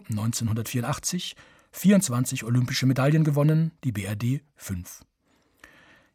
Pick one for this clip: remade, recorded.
recorded